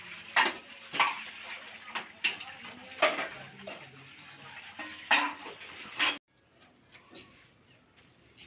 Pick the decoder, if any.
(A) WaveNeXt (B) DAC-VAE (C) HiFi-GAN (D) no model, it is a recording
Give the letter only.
D